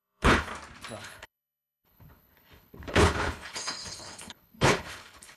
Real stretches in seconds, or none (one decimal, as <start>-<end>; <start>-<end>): 0.5-1.0